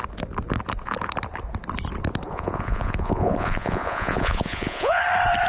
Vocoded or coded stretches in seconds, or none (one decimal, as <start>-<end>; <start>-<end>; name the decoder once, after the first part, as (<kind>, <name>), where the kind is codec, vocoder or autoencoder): 2.3-5.0 (vocoder, Vocos)